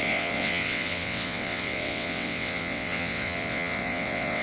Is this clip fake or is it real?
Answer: fake